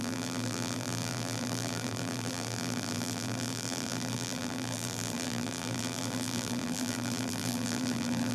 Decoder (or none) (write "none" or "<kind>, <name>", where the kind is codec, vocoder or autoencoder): vocoder, BigVGAN v2